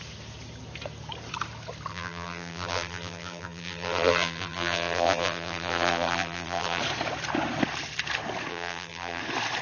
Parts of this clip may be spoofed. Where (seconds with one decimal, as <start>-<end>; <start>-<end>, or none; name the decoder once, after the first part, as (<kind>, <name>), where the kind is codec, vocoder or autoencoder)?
1.9-6.8 (vocoder, BigVGAN v2); 8.5-9.2